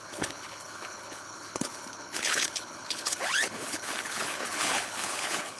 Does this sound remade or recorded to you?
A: remade